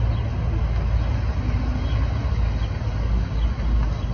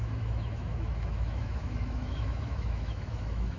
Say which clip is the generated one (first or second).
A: second